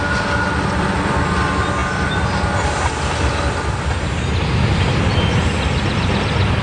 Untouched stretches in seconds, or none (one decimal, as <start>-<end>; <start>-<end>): 0.0-6.6